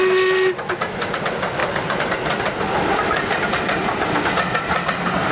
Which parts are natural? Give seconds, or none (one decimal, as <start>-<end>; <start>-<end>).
0.0-5.3